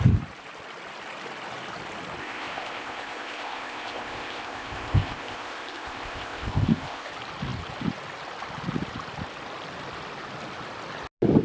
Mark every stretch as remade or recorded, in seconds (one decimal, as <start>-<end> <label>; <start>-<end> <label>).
0.0-2.2 recorded; 2.2-7.1 remade; 7.1-11.4 recorded

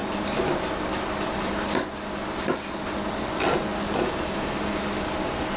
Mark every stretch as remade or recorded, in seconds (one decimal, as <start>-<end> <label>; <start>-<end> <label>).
0.0-3.7 recorded; 3.7-4.3 remade; 4.3-5.6 recorded

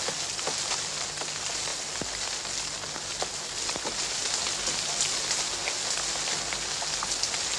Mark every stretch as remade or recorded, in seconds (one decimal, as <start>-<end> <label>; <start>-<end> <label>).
0.0-7.6 recorded

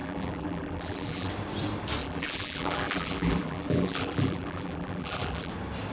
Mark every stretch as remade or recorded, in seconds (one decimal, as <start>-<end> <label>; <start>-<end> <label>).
0.0-1.3 remade; 1.3-2.0 recorded; 2.0-5.5 remade; 5.5-5.9 recorded

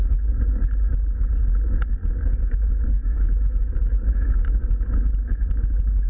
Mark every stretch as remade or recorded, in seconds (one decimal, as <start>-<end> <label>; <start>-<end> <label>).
0.0-2.1 recorded; 2.1-6.1 remade

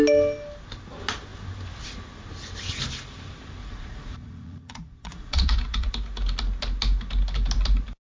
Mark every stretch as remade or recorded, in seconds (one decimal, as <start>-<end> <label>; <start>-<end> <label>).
0.0-3.6 recorded; 3.6-5.9 remade; 5.9-8.1 recorded